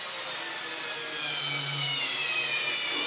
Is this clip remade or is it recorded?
recorded